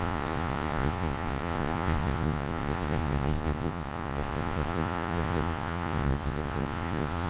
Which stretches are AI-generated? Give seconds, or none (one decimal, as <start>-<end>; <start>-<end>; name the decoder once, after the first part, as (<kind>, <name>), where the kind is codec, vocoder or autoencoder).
0.0-7.3 (vocoder, Vocos)